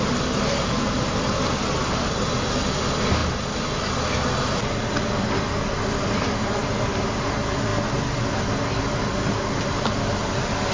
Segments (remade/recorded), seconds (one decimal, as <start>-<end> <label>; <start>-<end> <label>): 0.0-10.7 recorded